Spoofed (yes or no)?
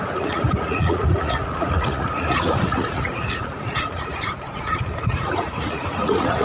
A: yes